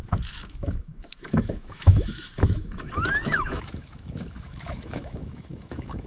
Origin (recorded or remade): remade